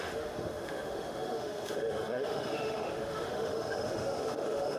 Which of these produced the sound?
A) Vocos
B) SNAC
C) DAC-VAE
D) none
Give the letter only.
C